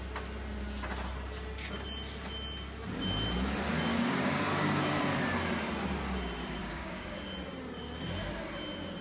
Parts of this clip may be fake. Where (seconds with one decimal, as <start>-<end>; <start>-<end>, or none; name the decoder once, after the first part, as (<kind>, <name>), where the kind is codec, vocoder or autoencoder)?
3.9-4.8 (codec, DAC); 6.6-7.3